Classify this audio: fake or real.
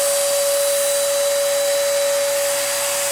real